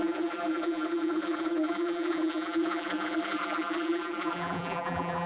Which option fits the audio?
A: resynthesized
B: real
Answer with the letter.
A